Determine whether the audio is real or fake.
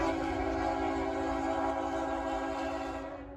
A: real